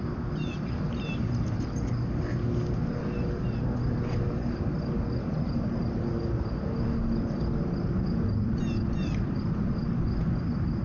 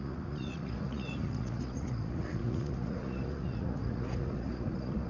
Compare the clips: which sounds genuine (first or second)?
first